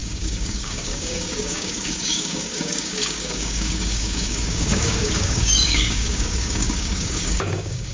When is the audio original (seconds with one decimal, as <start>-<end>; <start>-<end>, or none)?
none